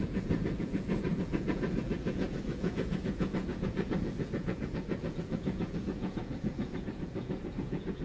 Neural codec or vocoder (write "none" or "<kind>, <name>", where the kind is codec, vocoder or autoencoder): vocoder, Vocos